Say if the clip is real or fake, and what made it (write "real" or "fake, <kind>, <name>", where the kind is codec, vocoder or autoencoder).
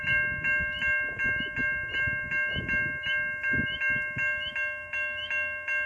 real